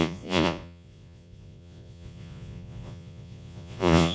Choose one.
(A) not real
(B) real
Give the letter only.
A